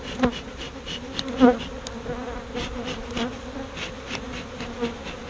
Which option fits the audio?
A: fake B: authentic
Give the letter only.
B